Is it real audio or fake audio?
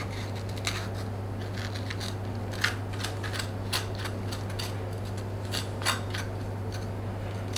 real